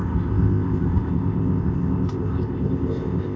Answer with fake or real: fake